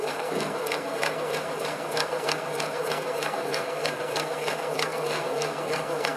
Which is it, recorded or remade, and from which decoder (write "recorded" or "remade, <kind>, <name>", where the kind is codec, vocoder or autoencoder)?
remade, codec, SNAC